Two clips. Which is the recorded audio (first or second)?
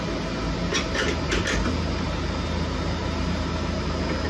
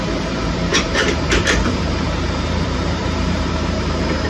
first